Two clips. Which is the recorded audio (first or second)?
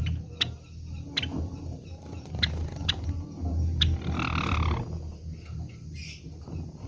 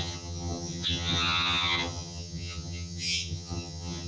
first